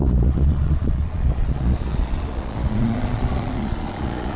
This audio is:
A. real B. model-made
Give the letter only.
B